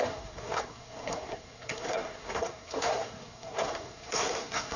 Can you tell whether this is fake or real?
fake